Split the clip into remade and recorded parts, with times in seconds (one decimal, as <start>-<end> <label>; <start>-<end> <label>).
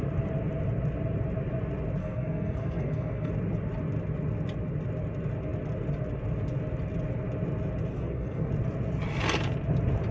0.0-2.0 recorded; 2.0-3.3 remade; 3.3-7.9 recorded; 7.9-8.5 remade; 8.5-10.1 recorded